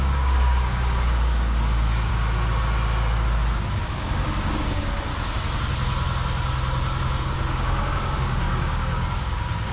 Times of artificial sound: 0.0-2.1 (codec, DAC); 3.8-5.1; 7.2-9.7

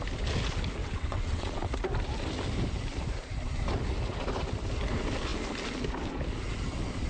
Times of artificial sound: 0.8-1.7 (vocoder, WaveNeXt)

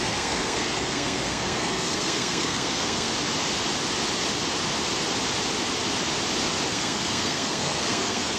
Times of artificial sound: 0.0-3.1 (codec, SNAC); 6.7-8.4

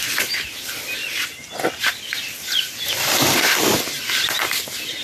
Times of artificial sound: none

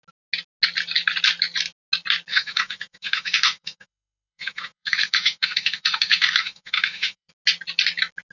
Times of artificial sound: 2.3-7.3 (autoencoder, DAC-VAE)

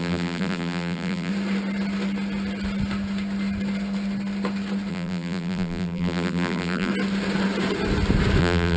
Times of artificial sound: 0.0-1.3 (vocoder, BigVGAN v2); 4.9-6.9; 8.4-8.8